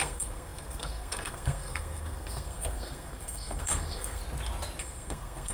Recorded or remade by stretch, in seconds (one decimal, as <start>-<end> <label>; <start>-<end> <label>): 0.0-4.2 remade; 4.2-4.8 recorded; 4.8-5.5 remade